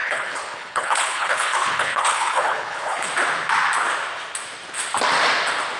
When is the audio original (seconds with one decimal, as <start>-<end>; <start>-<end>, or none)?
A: 3.1-5.8